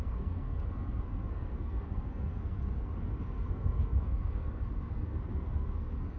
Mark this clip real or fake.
fake